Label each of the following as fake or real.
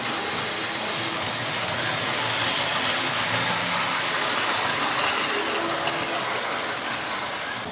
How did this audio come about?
real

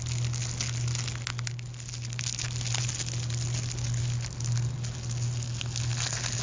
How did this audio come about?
real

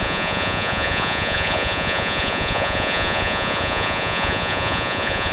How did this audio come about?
fake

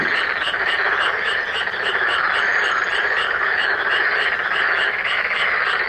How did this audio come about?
fake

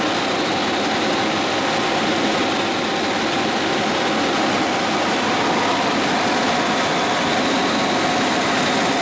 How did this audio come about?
real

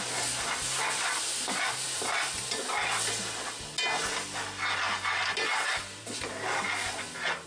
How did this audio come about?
real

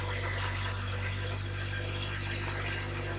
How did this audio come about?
real